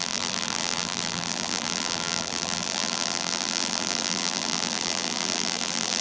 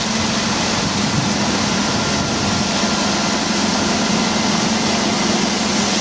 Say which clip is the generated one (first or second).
first